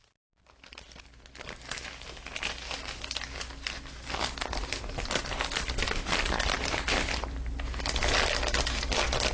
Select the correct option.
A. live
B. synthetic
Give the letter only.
A